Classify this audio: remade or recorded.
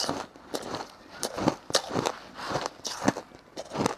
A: remade